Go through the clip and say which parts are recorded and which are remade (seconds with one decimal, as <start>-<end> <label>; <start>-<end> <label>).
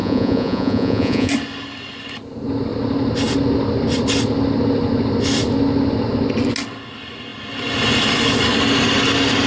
0.0-1.3 remade; 1.3-9.5 recorded